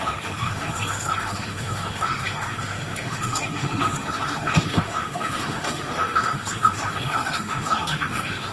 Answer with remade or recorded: remade